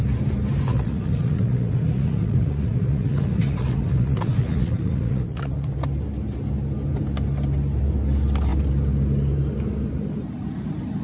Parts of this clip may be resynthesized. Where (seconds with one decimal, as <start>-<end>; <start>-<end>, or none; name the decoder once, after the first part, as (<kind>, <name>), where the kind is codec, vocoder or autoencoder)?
0.7-5.7 (vocoder, Vocos)